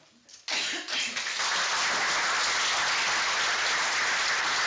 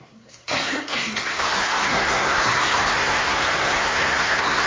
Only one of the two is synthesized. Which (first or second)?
second